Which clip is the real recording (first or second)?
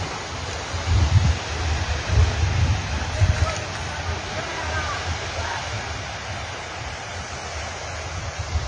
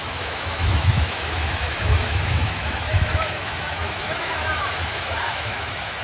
first